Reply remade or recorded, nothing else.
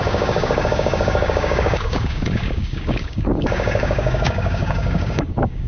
remade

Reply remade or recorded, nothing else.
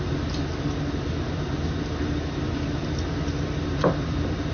recorded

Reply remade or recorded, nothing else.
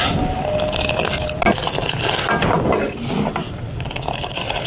recorded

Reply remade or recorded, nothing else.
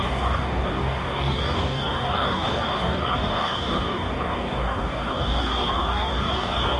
remade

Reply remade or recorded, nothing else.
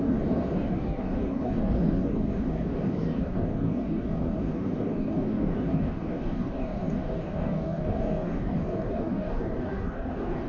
remade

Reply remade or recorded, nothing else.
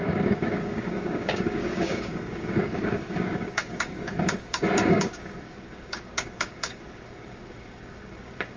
remade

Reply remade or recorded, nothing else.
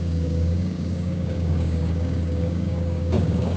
remade